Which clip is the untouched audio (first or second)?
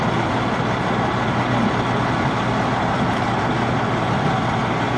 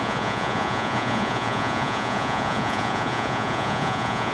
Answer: first